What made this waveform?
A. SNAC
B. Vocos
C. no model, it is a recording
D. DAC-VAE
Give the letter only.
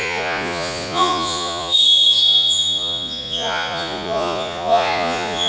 B